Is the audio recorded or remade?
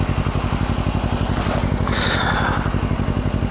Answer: recorded